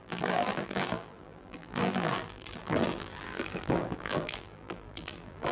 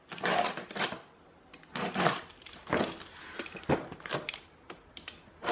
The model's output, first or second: first